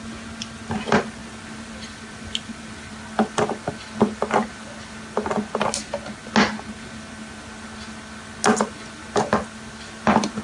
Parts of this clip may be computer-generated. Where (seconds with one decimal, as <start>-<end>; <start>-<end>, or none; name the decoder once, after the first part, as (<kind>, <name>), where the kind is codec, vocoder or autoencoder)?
none